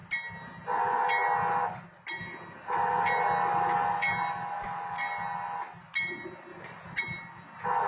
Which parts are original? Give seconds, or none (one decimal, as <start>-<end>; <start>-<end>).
0.0-6.5; 7.0-7.9